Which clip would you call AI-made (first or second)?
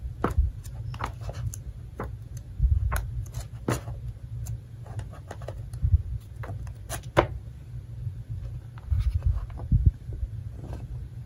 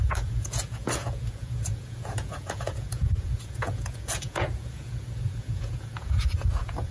second